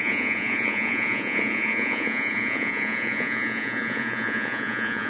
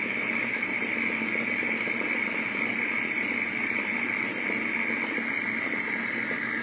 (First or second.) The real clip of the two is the second